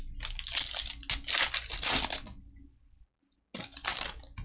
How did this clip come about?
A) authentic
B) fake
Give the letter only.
A